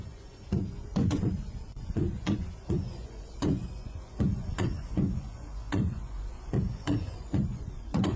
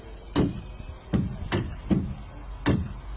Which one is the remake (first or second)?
first